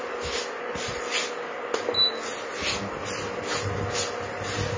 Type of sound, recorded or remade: recorded